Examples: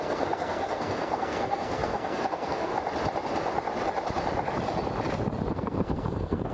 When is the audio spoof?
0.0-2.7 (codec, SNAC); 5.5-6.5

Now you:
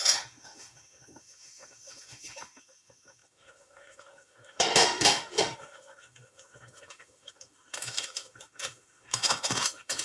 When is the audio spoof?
0.0-10.0 (autoencoder, DAC-VAE)

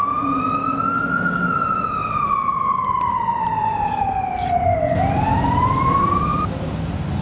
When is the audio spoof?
none

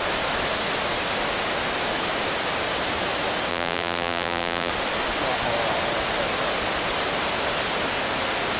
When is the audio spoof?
3.5-4.7 (vocoder, BigVGAN v2)

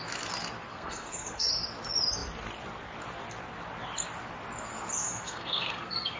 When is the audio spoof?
0.7-1.5 (codec, SNAC); 5.0-6.2

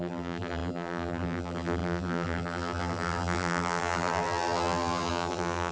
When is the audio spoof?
0.0-5.7 (vocoder, BigVGAN v2)